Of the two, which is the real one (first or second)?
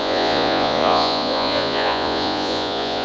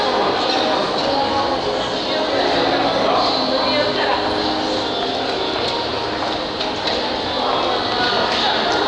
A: second